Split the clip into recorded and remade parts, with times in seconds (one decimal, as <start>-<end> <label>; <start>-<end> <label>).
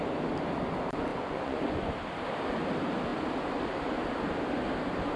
0.0-1.1 recorded; 1.1-1.9 remade; 1.9-5.2 recorded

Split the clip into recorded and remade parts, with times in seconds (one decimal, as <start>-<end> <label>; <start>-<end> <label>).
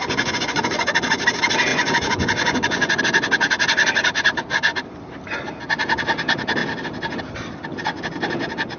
0.0-0.9 remade; 0.9-1.7 recorded; 1.7-3.0 remade; 3.0-8.8 recorded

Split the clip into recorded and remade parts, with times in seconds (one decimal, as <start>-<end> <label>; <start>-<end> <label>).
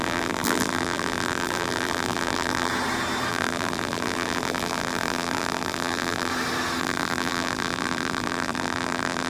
0.0-2.7 remade; 2.7-3.3 recorded; 3.3-6.3 remade; 6.3-6.8 recorded; 6.8-9.3 remade